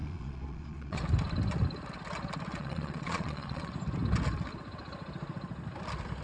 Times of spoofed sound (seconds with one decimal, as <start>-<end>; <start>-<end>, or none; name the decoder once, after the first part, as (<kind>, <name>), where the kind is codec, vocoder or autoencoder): 0.0-1.0 (vocoder, Vocos); 2.5-3.7